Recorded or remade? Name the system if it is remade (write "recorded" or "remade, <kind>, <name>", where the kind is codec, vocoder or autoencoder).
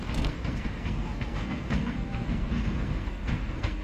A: remade, codec, SNAC